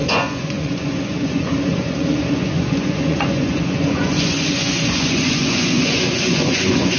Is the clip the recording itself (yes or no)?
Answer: no